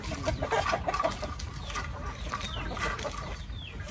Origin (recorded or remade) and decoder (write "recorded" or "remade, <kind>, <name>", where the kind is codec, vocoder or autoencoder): recorded